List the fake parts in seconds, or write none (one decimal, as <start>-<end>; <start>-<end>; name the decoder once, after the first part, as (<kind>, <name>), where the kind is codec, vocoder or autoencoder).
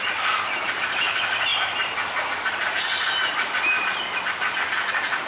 none